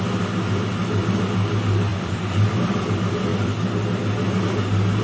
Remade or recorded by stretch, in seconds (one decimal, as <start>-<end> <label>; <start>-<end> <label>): 0.0-1.9 recorded; 1.9-2.9 remade; 2.9-5.0 recorded